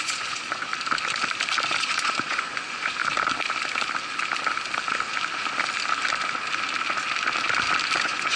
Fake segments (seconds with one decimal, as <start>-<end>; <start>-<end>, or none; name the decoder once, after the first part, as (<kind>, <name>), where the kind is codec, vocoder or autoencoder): 0.0-0.7 (vocoder, Vocos); 1.8-3.0; 8.0-8.4